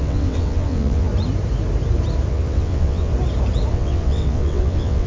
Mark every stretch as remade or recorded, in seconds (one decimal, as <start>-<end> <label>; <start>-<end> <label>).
0.0-1.1 remade; 1.1-2.3 recorded; 2.3-3.1 remade; 3.1-3.7 recorded; 3.7-5.1 remade